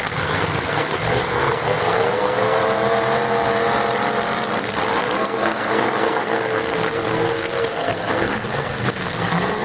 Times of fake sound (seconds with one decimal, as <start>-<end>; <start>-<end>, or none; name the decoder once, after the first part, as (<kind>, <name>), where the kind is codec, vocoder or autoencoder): 0.0-2.6 (codec, SNAC); 5.0-9.6